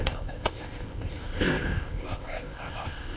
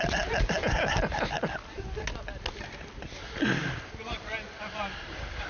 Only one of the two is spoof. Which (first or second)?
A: first